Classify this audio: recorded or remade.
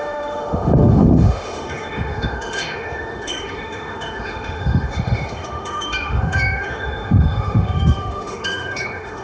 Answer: remade